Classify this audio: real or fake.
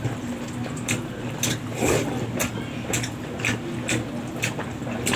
real